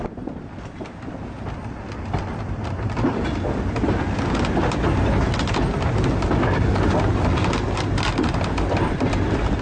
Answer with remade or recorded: recorded